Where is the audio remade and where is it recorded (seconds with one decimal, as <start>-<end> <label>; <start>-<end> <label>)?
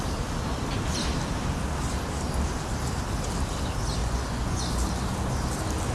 0.0-4.0 recorded; 4.0-4.6 remade; 4.6-5.9 recorded